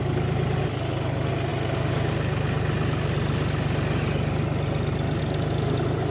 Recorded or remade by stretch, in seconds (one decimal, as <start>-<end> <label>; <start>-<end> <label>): 0.0-6.1 recorded